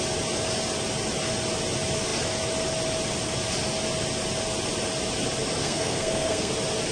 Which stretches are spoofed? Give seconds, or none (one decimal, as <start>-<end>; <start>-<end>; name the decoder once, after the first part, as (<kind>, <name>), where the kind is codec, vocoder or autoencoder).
5.6-6.5 (codec, SNAC)